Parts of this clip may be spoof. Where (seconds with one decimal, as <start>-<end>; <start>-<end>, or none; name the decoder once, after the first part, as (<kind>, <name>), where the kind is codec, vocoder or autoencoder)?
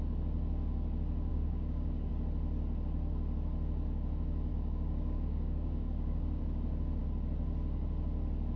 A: 1.3-2.1 (codec, DAC); 4.5-6.4